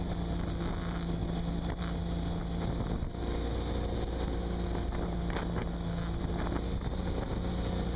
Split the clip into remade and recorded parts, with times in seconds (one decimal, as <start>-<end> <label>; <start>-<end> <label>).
0.0-8.0 recorded

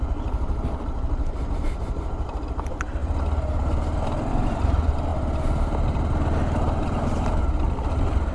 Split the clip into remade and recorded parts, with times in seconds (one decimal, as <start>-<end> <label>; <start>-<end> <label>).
0.0-8.3 recorded

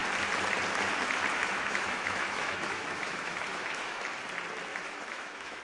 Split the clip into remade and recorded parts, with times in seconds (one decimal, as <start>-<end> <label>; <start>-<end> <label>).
0.0-1.3 recorded; 1.3-4.0 remade; 4.0-4.7 recorded; 4.7-5.6 remade

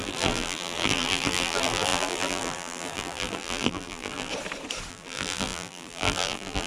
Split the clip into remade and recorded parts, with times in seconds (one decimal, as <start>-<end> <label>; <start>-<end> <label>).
0.0-4.3 remade; 4.3-4.9 recorded; 4.9-6.7 remade

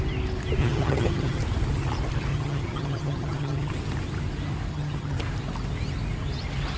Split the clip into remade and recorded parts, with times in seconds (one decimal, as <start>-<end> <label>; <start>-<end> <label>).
0.0-0.6 recorded; 0.6-1.4 remade; 1.4-2.3 recorded; 2.3-3.7 remade; 3.7-4.7 recorded; 4.7-5.2 remade; 5.2-6.8 recorded